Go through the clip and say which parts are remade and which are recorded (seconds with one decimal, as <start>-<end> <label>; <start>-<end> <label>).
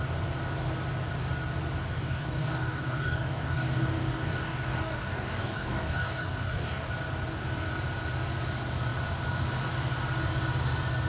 0.0-1.8 recorded; 1.8-6.9 remade; 6.9-11.1 recorded